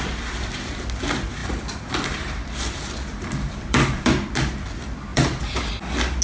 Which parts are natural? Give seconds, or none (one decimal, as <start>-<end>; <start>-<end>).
0.0-1.4; 4.1-5.1; 5.7-6.2